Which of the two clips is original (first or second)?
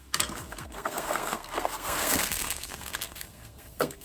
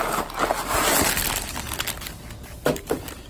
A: second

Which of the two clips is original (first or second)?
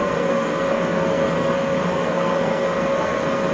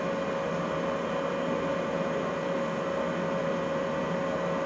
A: second